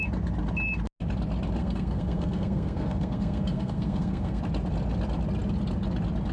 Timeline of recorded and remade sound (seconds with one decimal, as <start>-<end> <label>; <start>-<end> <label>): 0.0-1.6 recorded; 1.6-4.4 remade; 4.4-6.3 recorded

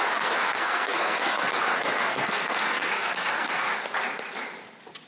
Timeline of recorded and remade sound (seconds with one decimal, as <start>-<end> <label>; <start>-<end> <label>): 0.0-3.7 remade; 3.7-5.1 recorded

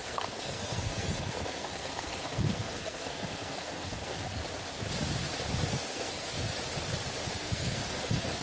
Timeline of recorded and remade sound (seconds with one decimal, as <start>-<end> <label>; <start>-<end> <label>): 0.0-4.4 remade; 4.4-5.7 recorded; 5.7-6.5 remade; 6.5-7.3 recorded; 7.3-8.4 remade

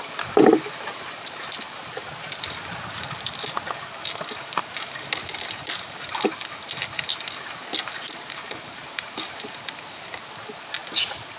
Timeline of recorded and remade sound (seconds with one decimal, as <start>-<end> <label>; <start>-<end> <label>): 0.0-11.4 recorded